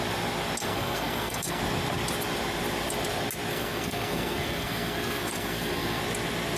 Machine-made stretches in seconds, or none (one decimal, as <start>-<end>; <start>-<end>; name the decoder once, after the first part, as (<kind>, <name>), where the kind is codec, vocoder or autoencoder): 0.6-1.6 (codec, SNAC); 3.5-6.0